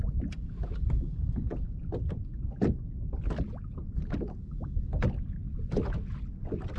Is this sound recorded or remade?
recorded